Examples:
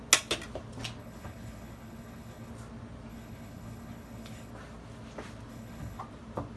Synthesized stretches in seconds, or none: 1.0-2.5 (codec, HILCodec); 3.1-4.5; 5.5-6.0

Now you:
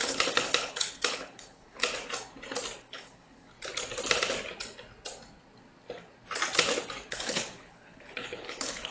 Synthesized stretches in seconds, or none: 0.0-1.8 (codec, HILCodec); 2.8-3.5; 7.1-8.9

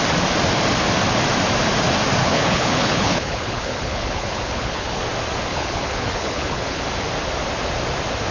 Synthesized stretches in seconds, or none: 2.2-5.0 (codec, HILCodec); 5.5-6.8